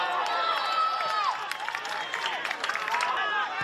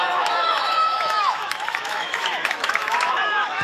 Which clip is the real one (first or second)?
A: first